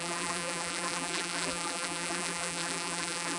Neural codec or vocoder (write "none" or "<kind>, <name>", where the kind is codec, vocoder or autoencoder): vocoder, BigVGAN v2